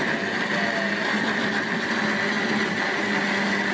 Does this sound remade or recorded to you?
recorded